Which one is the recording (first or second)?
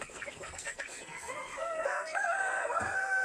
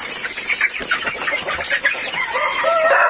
second